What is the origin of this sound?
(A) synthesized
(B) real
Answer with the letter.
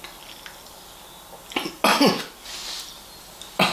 B